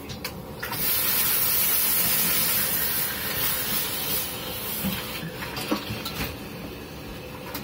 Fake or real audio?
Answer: real